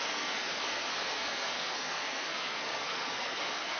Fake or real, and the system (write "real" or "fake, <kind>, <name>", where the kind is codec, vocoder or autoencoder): fake, codec, SNAC